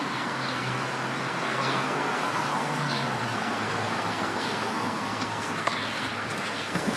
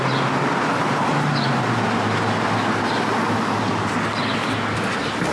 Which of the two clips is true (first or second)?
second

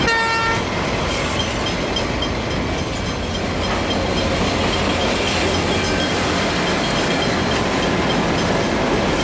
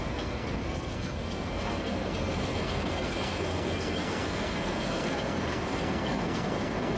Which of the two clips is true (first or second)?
first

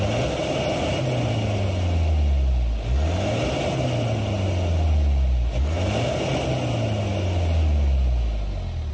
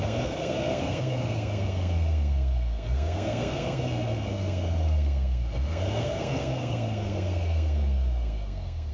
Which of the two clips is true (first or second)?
first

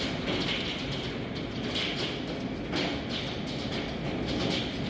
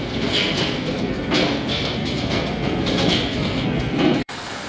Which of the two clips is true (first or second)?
first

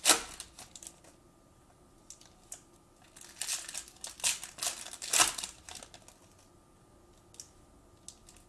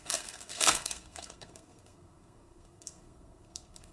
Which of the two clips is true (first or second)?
first